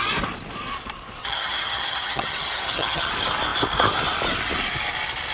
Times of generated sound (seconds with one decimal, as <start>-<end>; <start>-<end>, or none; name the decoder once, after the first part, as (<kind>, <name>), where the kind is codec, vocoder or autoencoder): 1.2-3.1 (vocoder, HiFi-GAN)